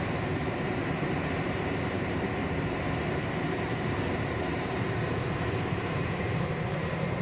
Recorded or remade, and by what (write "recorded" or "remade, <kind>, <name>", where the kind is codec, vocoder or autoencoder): remade, vocoder, BigVGAN v2